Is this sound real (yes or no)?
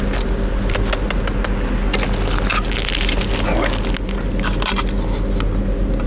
yes